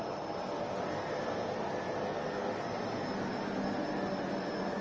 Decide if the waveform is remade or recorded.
recorded